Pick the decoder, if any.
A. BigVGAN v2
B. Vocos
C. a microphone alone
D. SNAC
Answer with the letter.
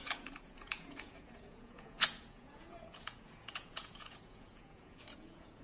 B